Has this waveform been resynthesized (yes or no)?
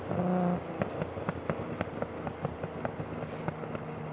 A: no